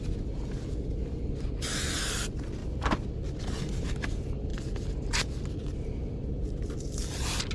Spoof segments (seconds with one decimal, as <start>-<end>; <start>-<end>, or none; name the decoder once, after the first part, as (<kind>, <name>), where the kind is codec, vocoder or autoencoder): none